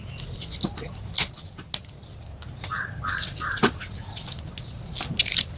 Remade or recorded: recorded